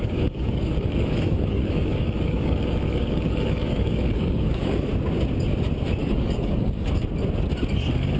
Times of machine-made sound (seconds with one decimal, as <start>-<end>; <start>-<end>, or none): 0.0-4.9; 6.0-6.9